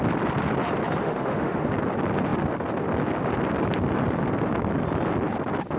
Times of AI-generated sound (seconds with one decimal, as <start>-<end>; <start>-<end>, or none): 1.0-1.7